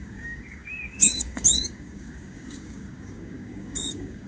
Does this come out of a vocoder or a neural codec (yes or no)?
yes